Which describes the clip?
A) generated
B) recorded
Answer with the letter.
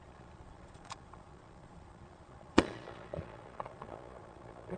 A